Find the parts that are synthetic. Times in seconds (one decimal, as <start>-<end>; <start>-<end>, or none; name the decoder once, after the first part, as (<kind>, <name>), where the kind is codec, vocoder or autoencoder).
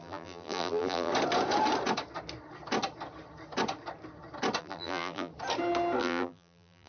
0.0-1.1 (vocoder, BigVGAN v2); 4.6-5.3; 6.0-6.9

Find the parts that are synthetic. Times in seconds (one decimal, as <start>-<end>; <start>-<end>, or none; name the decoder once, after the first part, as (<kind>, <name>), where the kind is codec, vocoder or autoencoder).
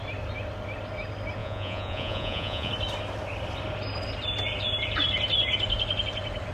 1.4-2.7 (vocoder, Vocos)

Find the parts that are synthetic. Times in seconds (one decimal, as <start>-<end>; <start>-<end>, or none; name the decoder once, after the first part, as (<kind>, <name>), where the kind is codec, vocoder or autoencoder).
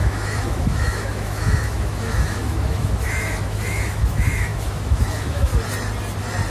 0.0-5.5 (autoencoder, DAC-VAE)